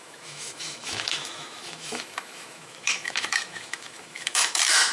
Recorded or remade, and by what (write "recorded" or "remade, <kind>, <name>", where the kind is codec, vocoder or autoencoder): remade, autoencoder, DAC-VAE